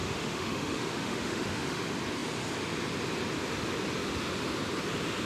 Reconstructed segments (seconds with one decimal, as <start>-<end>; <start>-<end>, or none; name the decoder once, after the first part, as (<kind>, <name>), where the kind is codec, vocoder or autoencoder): 0.0-1.8 (autoencoder, DAC-VAE)